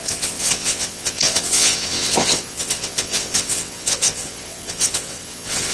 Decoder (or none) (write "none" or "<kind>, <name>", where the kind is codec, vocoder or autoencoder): vocoder, WaveNeXt